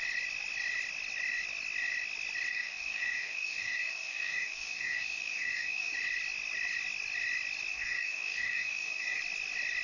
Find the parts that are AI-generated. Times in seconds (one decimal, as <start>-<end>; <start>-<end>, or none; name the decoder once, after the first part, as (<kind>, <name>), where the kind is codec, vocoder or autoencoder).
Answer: 2.5-5.9 (codec, DAC); 7.7-9.2